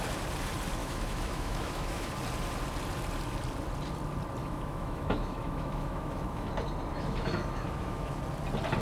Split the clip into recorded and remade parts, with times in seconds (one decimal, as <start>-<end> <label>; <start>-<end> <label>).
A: 0.0-0.8 recorded; 0.8-2.1 remade; 2.1-4.4 recorded; 4.4-6.5 remade; 6.5-6.9 recorded; 6.9-8.2 remade; 8.2-8.8 recorded